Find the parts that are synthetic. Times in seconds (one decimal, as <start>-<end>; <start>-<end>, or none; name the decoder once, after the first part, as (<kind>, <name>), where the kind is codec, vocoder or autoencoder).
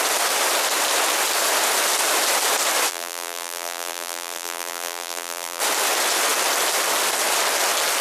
2.9-5.6 (vocoder, BigVGAN v2)